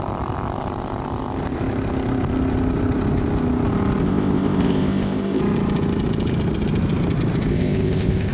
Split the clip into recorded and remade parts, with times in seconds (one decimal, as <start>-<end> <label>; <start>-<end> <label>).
0.0-4.0 recorded; 4.0-5.4 remade; 5.4-7.5 recorded; 7.5-8.3 remade